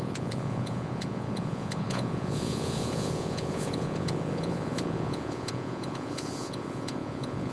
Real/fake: fake